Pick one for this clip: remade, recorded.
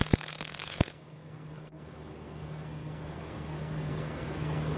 remade